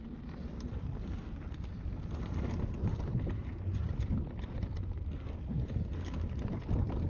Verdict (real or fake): real